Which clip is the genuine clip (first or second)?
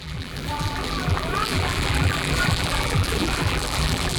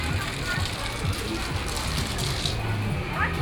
second